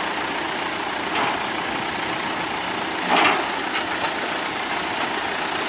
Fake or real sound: real